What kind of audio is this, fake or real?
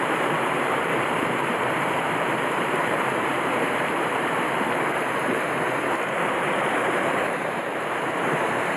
fake